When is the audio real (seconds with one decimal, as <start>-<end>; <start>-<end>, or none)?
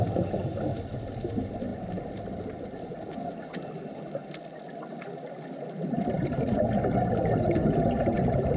0.0-8.6